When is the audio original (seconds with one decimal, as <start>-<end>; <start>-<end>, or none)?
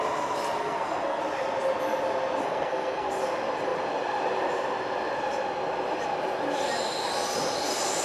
0.0-0.6; 1.2-2.4; 3.1-8.0